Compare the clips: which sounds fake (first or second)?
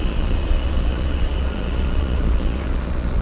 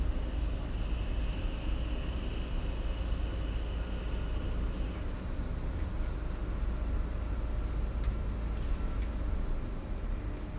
first